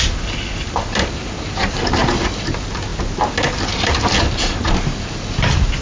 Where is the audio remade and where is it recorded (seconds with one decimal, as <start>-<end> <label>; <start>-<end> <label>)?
0.0-5.8 recorded